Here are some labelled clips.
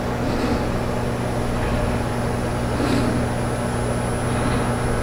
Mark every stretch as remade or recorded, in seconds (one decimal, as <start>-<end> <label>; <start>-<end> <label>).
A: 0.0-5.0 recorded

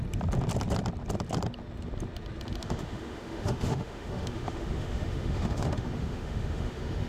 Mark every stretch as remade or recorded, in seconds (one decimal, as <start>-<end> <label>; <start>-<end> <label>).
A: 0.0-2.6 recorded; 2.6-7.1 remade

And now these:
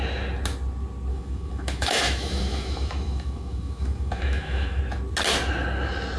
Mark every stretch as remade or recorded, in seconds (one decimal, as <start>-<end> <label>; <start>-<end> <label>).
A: 0.0-1.1 recorded; 1.1-4.8 remade; 4.8-6.2 recorded

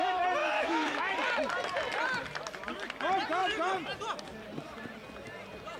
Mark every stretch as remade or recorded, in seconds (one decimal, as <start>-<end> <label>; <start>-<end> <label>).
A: 0.0-0.4 recorded; 0.4-1.0 remade; 1.0-5.8 recorded